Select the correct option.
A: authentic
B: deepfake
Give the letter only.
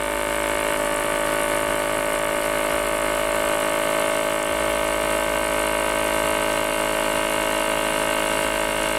A